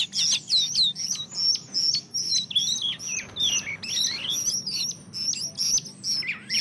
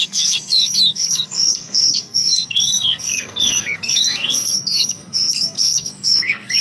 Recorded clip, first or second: first